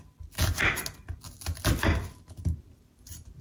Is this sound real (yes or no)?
yes